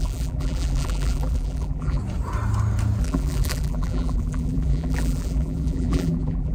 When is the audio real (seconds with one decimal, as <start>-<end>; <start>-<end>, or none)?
2.0-3.0